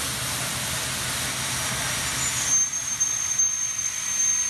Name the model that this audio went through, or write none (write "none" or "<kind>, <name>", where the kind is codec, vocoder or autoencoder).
none